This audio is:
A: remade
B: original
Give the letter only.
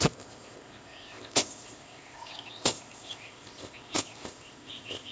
A